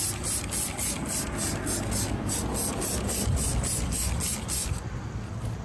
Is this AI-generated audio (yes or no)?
no